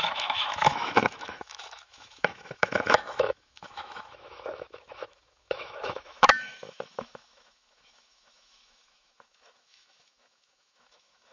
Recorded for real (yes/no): no